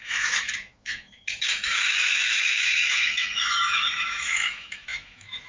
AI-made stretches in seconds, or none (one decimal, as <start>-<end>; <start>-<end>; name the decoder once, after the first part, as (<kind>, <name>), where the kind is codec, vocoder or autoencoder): 0.0-5.5 (autoencoder, DAC-VAE)